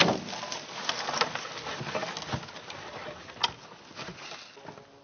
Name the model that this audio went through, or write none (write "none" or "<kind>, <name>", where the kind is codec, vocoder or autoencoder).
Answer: none